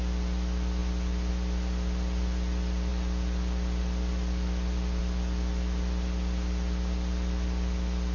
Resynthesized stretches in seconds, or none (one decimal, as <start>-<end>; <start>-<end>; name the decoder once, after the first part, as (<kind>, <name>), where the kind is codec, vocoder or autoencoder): none